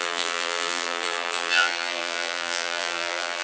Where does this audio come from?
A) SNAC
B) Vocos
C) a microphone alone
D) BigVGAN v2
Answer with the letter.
D